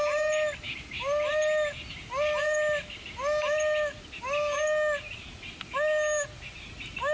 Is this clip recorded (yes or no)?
yes